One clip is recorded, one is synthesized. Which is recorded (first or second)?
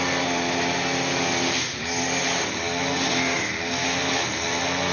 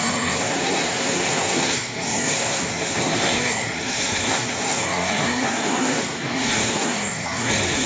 first